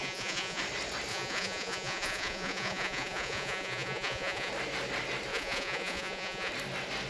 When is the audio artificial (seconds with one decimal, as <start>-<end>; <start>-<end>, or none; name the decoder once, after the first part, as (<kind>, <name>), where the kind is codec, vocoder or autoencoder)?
0.0-0.6 (vocoder, Vocos); 1.1-4.5; 5.3-6.5